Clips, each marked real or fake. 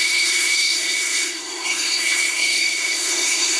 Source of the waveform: fake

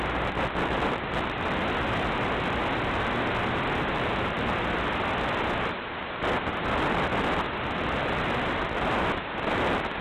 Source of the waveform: real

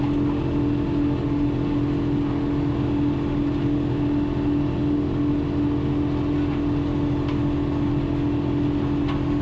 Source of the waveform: real